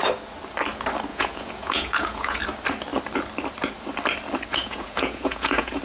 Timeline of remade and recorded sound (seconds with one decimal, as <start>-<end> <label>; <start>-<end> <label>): 0.0-1.1 recorded; 1.1-2.4 remade; 2.4-4.5 recorded; 4.5-5.8 remade